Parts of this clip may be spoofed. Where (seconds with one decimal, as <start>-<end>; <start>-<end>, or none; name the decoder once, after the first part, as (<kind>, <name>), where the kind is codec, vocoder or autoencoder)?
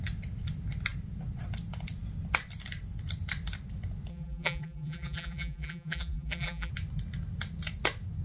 4.1-6.7 (vocoder, BigVGAN v2)